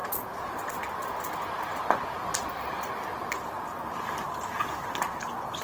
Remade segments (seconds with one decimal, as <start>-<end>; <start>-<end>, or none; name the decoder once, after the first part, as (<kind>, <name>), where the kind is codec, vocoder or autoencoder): 0.0-0.7 (vocoder, Vocos)